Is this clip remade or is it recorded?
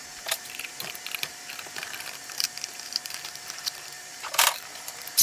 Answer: remade